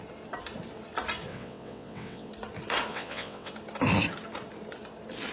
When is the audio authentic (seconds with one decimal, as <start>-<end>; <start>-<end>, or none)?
0.0-1.3; 2.3-2.9; 3.5-5.3